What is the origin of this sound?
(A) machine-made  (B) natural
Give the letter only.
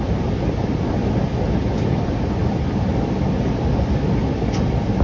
B